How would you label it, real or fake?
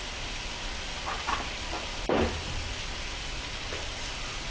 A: fake